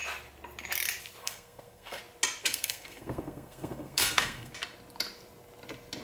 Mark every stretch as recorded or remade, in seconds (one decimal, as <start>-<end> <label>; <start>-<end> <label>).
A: 0.0-1.2 recorded; 1.2-2.0 remade; 2.0-2.4 recorded; 2.4-4.5 remade; 4.5-6.0 recorded